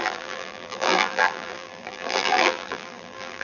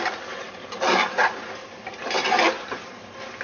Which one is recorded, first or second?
second